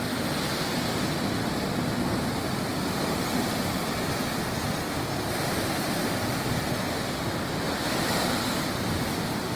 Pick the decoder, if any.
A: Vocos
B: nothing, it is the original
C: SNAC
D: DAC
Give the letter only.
B